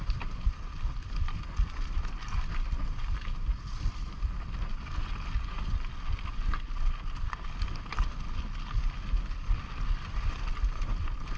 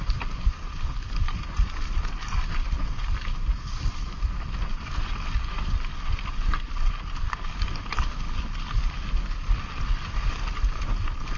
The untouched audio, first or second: first